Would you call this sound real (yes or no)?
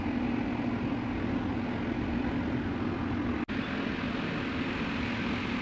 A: yes